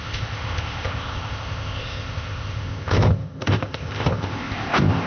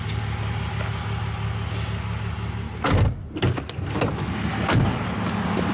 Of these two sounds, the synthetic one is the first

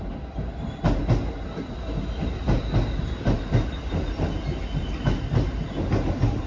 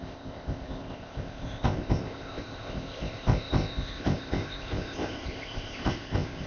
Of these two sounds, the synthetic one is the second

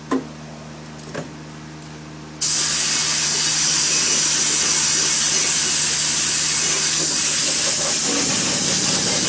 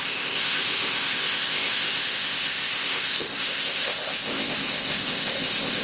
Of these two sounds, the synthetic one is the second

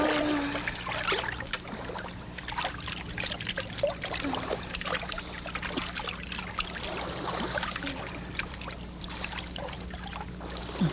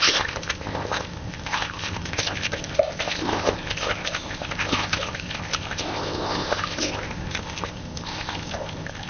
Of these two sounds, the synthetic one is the second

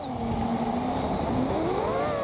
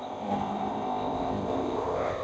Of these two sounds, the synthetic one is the second